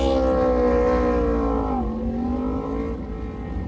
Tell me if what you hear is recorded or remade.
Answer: recorded